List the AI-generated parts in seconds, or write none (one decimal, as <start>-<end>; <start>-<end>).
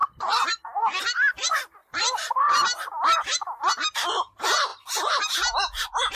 1.8-3.7